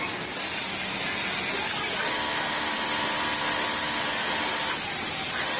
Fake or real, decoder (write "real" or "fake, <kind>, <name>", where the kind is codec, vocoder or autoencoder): real